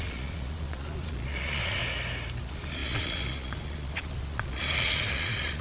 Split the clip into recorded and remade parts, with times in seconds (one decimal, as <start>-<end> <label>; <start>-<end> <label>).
0.0-1.8 remade; 1.8-2.4 recorded; 2.4-5.6 remade